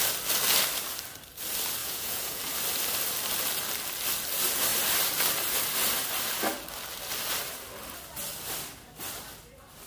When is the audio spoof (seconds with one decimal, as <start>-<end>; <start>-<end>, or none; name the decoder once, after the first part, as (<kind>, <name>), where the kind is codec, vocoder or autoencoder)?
1.8-2.4 (vocoder, Vocos)